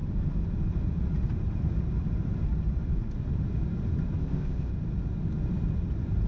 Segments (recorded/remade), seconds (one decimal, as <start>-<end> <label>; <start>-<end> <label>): 0.0-4.2 recorded; 4.2-4.7 remade; 4.7-6.3 recorded